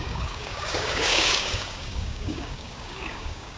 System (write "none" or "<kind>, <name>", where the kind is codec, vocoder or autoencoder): codec, DAC